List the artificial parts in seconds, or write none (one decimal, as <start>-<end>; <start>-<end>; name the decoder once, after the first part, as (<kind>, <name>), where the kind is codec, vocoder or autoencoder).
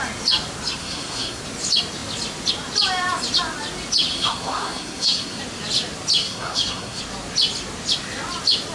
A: 0.8-1.4 (codec, SNAC); 4.1-5.4; 6.2-7.0